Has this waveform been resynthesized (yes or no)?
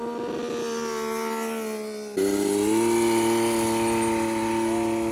no